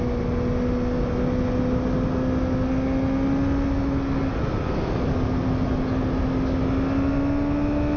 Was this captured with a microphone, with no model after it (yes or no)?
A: yes